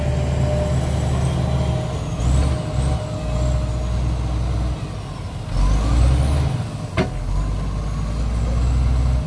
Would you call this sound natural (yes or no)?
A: yes